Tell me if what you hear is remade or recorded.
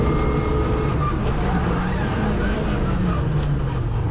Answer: recorded